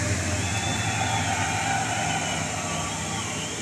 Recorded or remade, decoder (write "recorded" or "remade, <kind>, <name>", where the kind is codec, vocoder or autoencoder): recorded